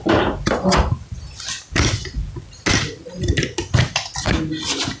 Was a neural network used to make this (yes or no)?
no